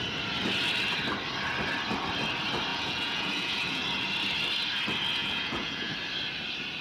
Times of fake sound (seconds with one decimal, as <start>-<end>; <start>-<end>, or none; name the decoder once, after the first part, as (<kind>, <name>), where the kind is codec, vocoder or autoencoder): 2.7-3.8 (vocoder, Vocos); 5.2-5.9